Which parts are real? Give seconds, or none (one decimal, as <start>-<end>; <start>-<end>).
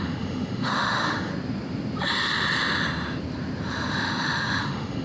1.3-3.9